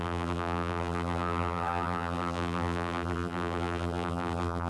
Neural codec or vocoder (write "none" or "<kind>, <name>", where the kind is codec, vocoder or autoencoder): vocoder, BigVGAN v2